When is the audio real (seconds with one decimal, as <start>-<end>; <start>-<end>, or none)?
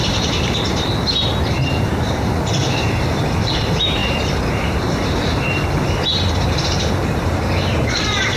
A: 1.3-2.6